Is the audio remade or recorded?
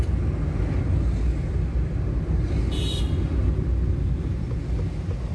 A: recorded